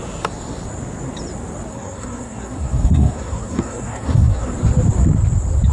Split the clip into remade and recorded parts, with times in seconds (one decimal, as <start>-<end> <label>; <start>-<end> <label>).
0.0-1.7 recorded; 1.7-4.5 remade; 4.5-5.7 recorded

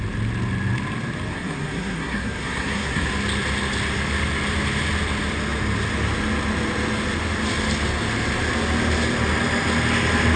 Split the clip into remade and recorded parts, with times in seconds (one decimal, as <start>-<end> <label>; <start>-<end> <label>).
0.0-1.3 recorded; 1.3-3.1 remade; 3.1-10.4 recorded

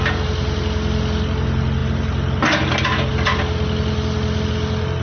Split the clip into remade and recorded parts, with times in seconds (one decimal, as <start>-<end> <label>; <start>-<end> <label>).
0.0-5.0 recorded

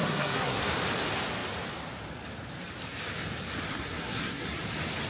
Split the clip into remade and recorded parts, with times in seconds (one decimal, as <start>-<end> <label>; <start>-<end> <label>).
0.0-0.6 remade; 0.6-3.7 recorded; 3.7-4.6 remade; 4.6-5.1 recorded

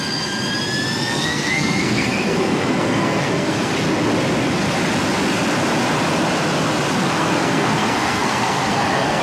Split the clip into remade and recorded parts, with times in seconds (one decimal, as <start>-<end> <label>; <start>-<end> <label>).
0.0-1.0 recorded; 1.0-3.7 remade; 3.7-7.0 recorded; 7.0-9.2 remade